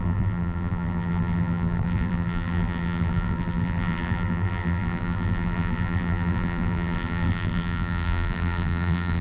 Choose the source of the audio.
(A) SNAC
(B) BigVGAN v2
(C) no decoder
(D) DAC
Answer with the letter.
B